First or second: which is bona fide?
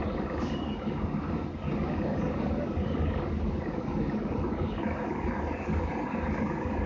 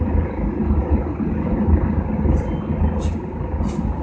second